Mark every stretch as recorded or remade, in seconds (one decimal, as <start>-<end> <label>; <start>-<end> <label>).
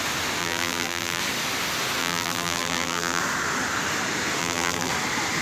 0.0-0.4 recorded; 0.4-1.2 remade; 1.2-2.0 recorded; 2.0-3.2 remade; 3.2-4.4 recorded; 4.4-4.9 remade; 4.9-5.4 recorded